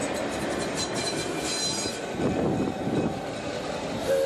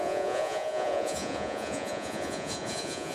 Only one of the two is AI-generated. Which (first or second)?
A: second